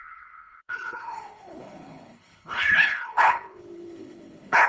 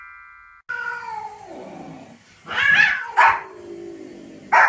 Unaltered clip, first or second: second